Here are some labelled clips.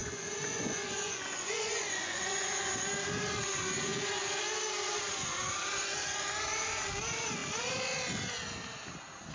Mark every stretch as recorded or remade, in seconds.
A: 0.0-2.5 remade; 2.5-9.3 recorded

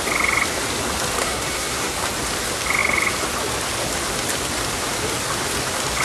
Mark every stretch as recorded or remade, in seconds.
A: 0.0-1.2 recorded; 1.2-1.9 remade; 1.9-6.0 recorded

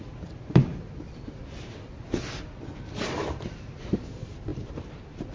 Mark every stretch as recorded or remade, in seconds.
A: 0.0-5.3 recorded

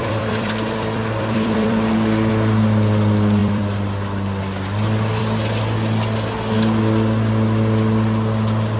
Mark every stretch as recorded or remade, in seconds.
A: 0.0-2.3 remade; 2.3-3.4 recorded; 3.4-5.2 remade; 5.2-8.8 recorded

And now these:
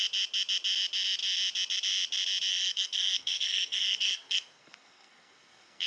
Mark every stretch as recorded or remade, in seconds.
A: 0.0-2.5 recorded; 2.5-5.9 remade

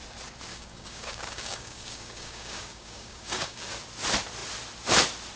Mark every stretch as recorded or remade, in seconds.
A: 0.0-0.5 recorded; 0.5-3.7 remade; 3.7-5.4 recorded

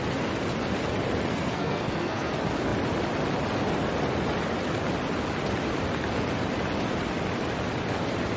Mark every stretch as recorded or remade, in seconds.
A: 0.0-1.3 recorded; 1.3-2.3 remade; 2.3-8.4 recorded